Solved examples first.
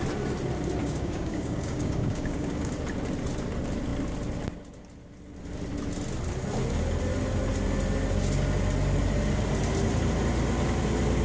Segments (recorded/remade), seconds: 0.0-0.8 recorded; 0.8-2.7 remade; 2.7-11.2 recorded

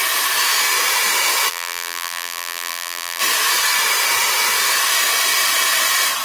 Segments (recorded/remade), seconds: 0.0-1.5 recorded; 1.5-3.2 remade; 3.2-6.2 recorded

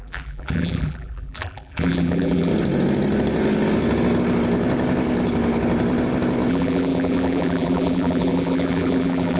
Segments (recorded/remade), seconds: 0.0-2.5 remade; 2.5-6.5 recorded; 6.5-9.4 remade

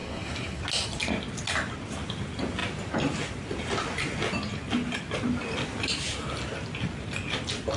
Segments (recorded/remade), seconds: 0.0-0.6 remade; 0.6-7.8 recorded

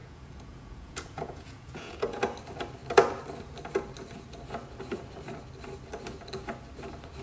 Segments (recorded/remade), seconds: 0.0-2.2 remade; 2.2-7.2 recorded

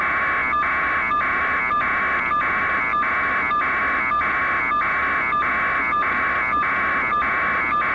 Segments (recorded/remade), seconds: 0.0-7.9 recorded